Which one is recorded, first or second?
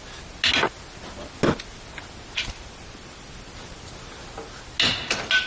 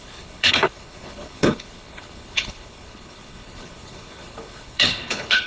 first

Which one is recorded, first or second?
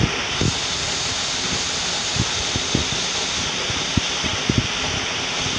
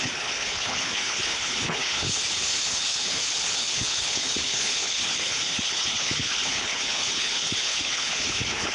first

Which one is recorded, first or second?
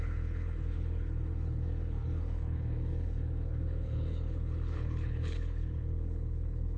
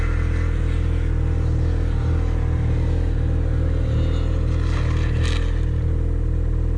second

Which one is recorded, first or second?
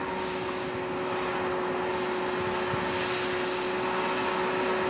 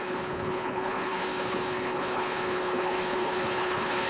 first